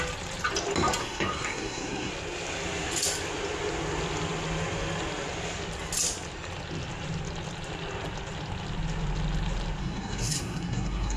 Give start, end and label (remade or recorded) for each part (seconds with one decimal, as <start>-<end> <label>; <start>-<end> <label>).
0.0-1.0 recorded; 1.0-2.1 remade; 2.1-9.8 recorded; 9.8-11.2 remade